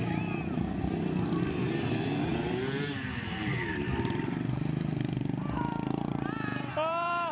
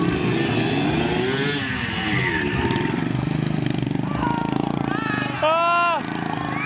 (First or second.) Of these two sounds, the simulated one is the first